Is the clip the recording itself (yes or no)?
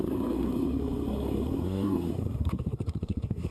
no